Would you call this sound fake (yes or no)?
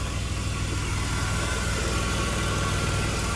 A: no